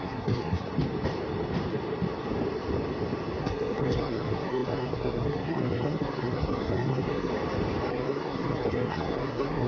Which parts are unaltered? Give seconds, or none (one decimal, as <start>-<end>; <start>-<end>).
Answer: 0.7-3.4; 7.3-7.9